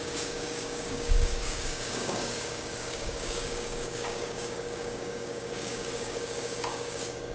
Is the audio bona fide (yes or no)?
no